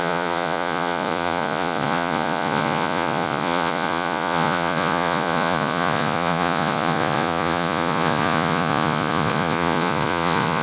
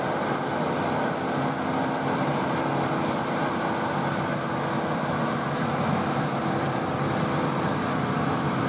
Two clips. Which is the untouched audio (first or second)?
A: second